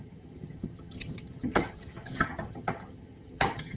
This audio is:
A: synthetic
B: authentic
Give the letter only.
A